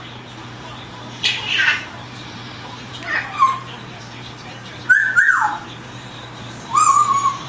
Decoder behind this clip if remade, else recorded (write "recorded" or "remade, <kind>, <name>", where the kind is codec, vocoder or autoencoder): remade, vocoder, BigVGAN v2